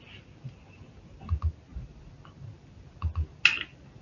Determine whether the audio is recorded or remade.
recorded